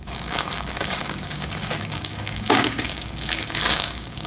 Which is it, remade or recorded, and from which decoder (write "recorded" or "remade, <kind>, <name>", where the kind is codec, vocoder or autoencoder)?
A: remade, codec, DAC